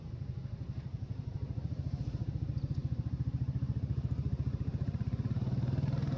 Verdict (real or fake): fake